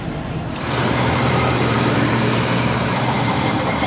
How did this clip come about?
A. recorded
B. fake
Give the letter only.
B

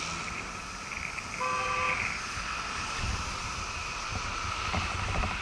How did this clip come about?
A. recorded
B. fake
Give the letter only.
A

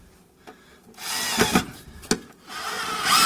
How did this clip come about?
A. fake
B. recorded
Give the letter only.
B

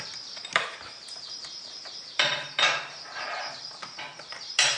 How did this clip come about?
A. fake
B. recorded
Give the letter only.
A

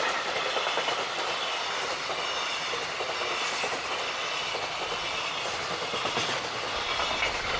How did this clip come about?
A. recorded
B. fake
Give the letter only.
A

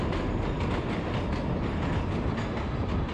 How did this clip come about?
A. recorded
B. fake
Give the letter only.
A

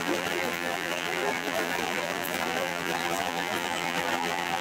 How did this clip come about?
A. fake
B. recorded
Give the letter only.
A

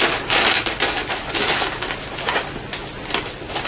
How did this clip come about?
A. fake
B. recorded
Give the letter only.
B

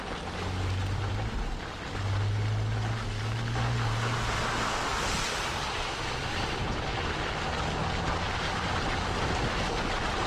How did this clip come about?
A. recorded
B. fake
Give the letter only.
A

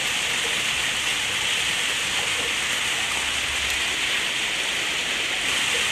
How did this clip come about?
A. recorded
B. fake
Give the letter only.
A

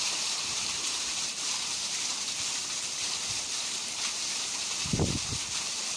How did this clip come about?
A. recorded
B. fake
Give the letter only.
B